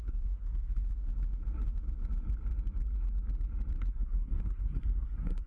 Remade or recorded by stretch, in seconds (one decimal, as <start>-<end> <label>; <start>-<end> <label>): 0.0-0.9 remade; 0.9-3.8 recorded; 3.8-5.5 remade